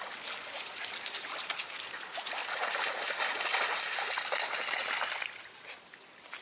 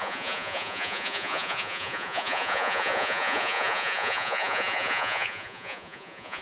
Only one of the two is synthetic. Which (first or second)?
second